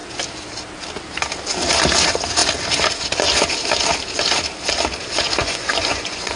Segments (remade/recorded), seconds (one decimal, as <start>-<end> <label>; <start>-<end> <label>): 0.0-5.4 recorded; 5.4-6.4 remade